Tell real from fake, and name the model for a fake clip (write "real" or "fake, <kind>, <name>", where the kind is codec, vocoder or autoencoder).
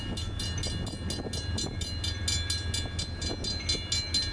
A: real